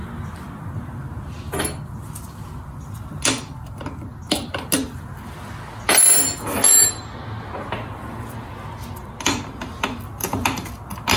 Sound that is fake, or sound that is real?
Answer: real